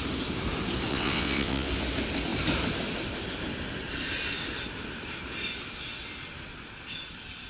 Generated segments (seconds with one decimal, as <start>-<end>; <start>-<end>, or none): 0.9-1.7